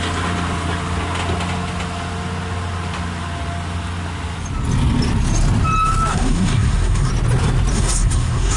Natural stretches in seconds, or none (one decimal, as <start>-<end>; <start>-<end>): 0.0-6.1; 7.1-7.7